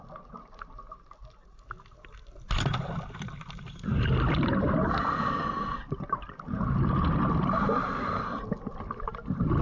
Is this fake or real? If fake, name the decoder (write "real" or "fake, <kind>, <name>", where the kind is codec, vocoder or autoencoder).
real